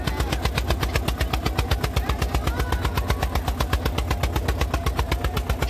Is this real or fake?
real